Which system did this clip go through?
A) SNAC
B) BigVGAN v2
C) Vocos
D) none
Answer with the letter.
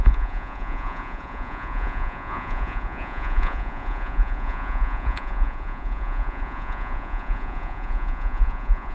C